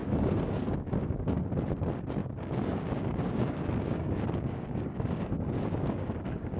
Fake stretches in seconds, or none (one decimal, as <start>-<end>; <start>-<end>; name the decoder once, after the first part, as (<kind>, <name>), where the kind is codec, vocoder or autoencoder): 0.0-1.4 (codec, DAC); 2.2-6.6